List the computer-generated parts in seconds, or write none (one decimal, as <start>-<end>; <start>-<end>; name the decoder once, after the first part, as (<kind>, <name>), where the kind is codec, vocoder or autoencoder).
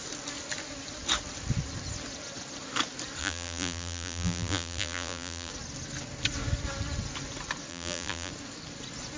3.2-5.5 (vocoder, BigVGAN v2); 7.7-8.3